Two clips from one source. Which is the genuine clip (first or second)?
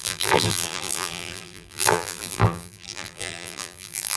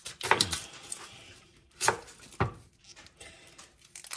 second